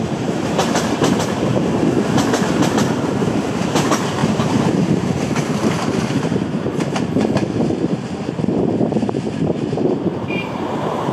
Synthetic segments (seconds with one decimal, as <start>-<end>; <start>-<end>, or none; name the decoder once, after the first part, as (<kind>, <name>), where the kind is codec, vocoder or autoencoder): 0.0-0.6 (vocoder, BigVGAN v2); 3.4-11.1